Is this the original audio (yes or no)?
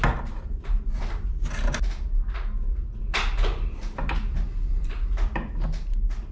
yes